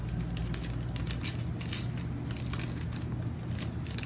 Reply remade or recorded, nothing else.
recorded